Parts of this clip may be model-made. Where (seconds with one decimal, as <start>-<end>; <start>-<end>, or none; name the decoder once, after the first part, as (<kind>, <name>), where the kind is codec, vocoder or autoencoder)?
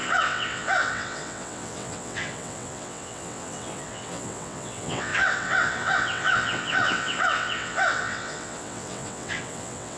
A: 0.0-10.0 (vocoder, WaveNeXt)